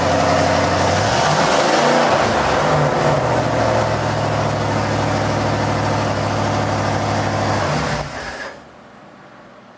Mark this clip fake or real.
real